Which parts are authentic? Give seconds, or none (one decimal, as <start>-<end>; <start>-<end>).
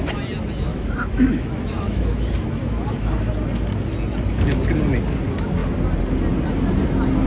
0.0-0.7; 3.3-7.3